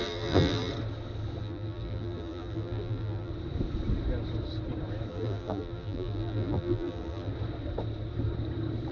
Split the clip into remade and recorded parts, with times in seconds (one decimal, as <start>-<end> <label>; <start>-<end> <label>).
0.0-0.7 remade; 0.7-1.4 recorded; 1.4-3.3 remade; 3.3-5.1 recorded; 5.1-7.3 remade; 7.3-8.9 recorded